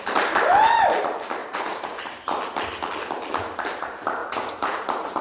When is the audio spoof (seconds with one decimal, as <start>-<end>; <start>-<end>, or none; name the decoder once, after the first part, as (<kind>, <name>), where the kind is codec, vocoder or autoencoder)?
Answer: 1.4-2.0 (vocoder, Vocos); 4.2-5.2